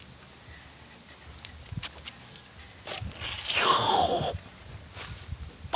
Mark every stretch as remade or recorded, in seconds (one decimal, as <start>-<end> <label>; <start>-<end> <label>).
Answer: 0.0-3.6 recorded; 3.6-4.3 remade; 4.3-5.8 recorded